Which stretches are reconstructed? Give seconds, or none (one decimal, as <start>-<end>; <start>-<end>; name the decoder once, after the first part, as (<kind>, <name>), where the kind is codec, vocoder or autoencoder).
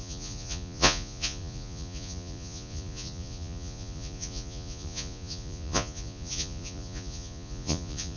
0.0-8.2 (vocoder, Vocos)